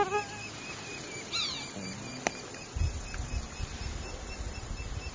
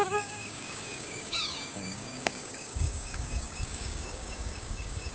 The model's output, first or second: second